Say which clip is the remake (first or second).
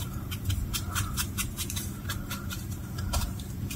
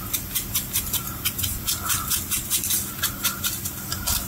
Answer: first